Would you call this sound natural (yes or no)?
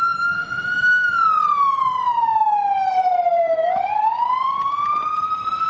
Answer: yes